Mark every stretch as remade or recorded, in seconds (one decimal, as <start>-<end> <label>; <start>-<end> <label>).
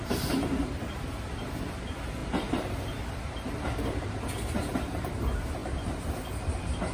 0.0-6.9 recorded